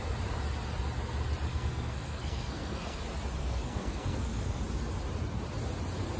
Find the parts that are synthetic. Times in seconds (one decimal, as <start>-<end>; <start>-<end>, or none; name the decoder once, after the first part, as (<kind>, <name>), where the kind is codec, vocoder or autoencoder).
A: 1.5-3.0 (codec, SNAC); 3.4-4.6